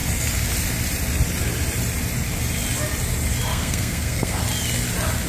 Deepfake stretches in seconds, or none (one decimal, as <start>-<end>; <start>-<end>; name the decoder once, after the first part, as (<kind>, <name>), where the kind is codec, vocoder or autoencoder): 3.5-4.4 (codec, SNAC)